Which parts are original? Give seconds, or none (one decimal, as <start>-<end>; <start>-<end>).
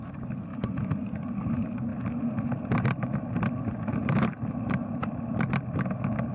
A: 0.0-6.3